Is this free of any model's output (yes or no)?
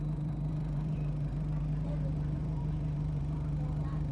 no